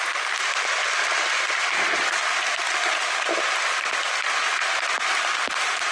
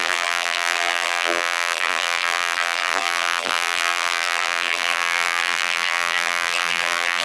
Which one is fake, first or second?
second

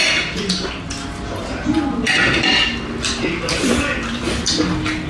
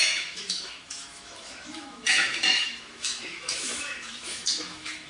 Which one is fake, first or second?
second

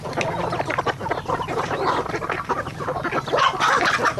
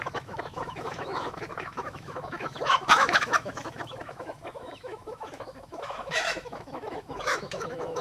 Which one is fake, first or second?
second